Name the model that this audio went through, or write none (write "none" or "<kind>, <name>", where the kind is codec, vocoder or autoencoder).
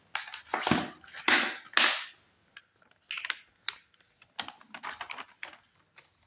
none